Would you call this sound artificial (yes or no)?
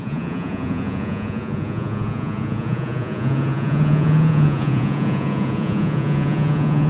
yes